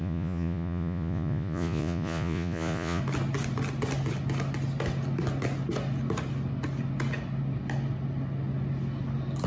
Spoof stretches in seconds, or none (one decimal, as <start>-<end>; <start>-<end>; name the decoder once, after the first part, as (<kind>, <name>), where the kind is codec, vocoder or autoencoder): 0.0-3.0 (vocoder, Vocos)